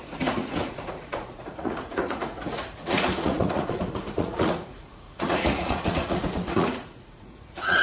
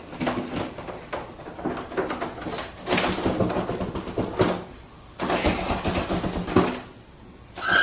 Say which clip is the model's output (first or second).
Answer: first